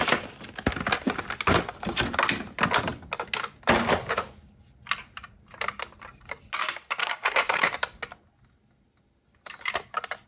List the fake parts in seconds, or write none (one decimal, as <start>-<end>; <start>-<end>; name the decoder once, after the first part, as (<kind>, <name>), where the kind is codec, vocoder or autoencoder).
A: 7.0-7.6 (codec, DAC)